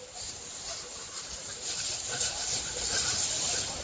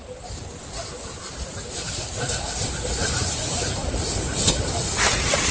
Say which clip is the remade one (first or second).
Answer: first